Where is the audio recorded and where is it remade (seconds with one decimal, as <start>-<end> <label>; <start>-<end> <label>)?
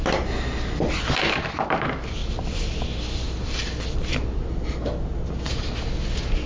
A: 0.0-2.2 recorded; 2.2-4.1 remade; 4.1-6.5 recorded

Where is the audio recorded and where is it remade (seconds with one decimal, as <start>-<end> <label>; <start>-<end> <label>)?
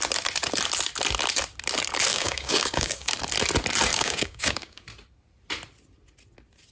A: 0.0-2.1 recorded; 2.1-3.1 remade; 3.1-3.9 recorded; 3.9-4.8 remade; 4.8-6.7 recorded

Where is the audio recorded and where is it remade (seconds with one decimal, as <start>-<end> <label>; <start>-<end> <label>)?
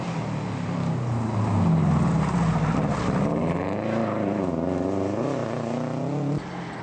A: 0.0-6.8 recorded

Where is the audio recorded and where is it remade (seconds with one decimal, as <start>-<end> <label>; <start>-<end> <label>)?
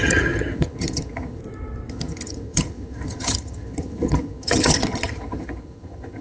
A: 0.0-1.4 remade; 1.4-1.9 recorded; 1.9-6.2 remade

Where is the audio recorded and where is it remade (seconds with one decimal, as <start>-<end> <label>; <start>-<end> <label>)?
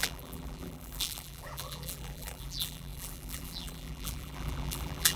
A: 0.0-5.2 remade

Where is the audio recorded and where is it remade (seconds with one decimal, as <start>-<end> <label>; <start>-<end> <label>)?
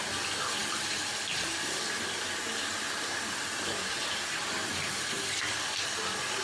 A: 0.0-6.4 recorded